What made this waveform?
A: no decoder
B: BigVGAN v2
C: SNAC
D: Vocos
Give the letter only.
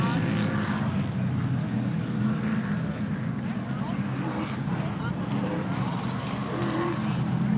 A